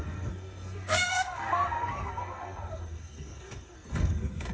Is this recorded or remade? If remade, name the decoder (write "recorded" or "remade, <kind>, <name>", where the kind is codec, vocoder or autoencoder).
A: remade, codec, SNAC